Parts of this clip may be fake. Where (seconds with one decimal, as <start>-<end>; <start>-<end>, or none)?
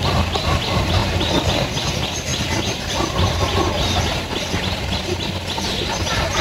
1.0-1.9